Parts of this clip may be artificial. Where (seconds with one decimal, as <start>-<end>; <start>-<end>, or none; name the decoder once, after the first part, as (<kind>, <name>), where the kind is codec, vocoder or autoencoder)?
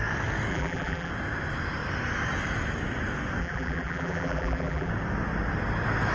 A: 0.5-1.1 (vocoder, BigVGAN v2); 3.4-4.9